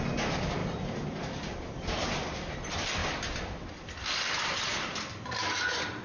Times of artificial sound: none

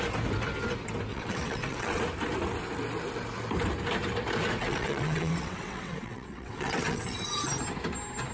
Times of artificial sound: 1.1-2.0 (vocoder, WaveNeXt); 4.6-7.5

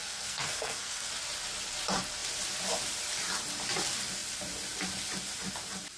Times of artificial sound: 0.0-1.1 (codec, SNAC)